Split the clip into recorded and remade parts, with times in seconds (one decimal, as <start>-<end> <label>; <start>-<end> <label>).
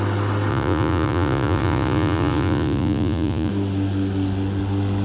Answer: 0.0-0.5 recorded; 0.5-3.5 remade; 3.5-5.0 recorded